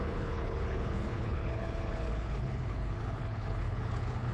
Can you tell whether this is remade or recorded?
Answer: remade